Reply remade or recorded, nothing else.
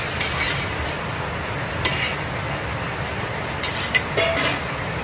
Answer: recorded